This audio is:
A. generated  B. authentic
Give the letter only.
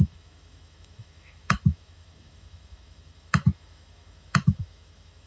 A